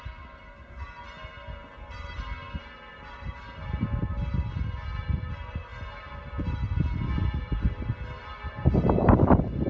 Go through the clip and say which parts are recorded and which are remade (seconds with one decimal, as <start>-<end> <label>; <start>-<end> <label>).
0.0-9.7 recorded